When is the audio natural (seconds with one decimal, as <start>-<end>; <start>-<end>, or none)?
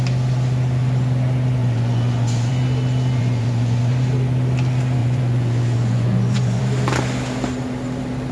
0.0-1.6; 2.5-3.2; 3.9-5.0; 6.6-8.3